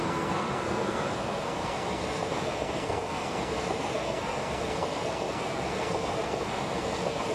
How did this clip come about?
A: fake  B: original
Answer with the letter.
A